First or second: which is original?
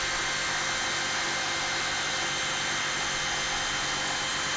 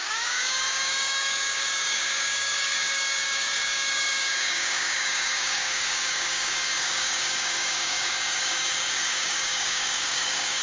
first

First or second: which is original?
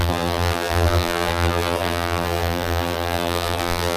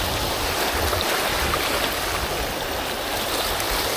second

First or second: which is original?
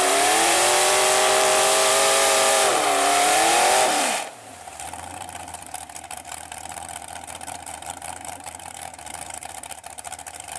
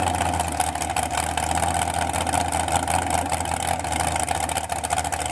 second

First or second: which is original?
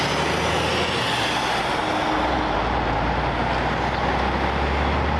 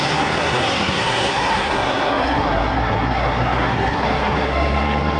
first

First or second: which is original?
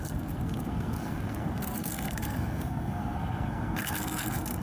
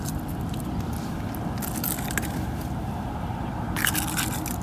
second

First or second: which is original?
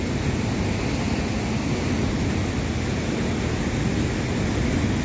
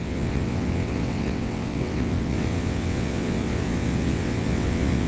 first